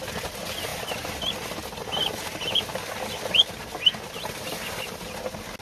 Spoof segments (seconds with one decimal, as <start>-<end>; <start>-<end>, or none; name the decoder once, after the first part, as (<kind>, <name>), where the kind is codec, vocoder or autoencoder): none